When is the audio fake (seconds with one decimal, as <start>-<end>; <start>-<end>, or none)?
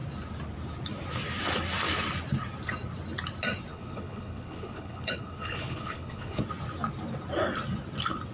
3.7-6.4